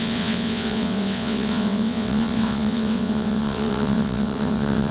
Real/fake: fake